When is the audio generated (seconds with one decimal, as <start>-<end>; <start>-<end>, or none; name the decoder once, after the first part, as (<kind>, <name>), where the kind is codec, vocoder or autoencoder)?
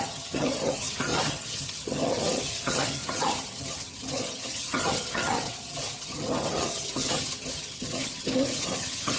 0.0-9.2 (vocoder, HiFi-GAN)